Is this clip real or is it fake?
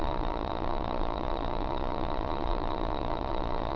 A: fake